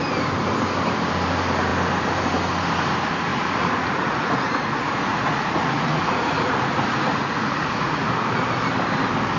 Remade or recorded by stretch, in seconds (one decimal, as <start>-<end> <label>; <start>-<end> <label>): 0.0-3.3 recorded; 3.3-8.1 remade; 8.1-9.4 recorded